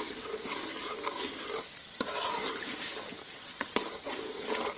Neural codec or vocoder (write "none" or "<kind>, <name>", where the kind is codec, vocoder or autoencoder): none